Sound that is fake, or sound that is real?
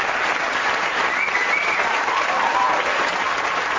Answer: real